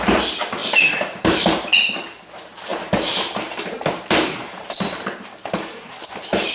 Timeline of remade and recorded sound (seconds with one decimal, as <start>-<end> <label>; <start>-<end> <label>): 0.0-0.6 recorded; 0.6-1.7 remade; 1.7-2.7 recorded; 2.7-6.5 remade